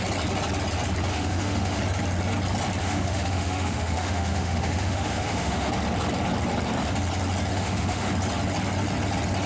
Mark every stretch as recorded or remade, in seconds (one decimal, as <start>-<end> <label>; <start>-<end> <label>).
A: 0.0-1.1 recorded; 1.1-1.8 remade; 1.8-2.8 recorded; 2.8-5.7 remade; 5.7-7.5 recorded; 7.5-8.1 remade; 8.1-9.5 recorded